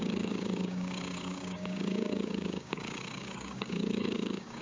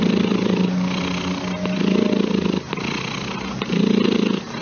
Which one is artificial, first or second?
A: first